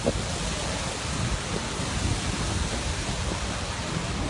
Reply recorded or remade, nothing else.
recorded